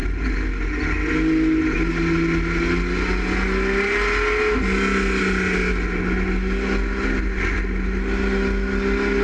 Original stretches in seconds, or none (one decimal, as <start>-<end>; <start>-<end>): 0.0-9.2